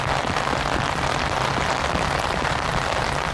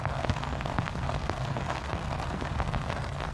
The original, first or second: first